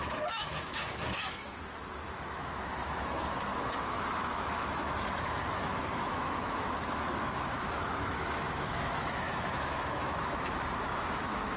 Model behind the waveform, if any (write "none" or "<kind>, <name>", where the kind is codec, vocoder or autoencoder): autoencoder, DAC-VAE